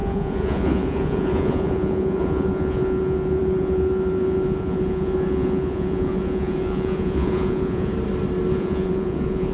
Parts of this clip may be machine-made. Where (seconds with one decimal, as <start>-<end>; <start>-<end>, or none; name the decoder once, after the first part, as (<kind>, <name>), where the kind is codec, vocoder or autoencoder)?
0.0-7.9 (vocoder, Vocos); 8.5-9.5